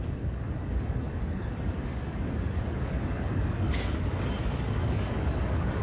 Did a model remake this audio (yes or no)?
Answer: yes